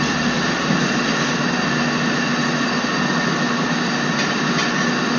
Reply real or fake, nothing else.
real